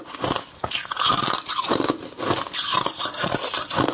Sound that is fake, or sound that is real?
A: real